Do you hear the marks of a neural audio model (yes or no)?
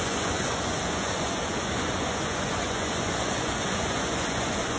yes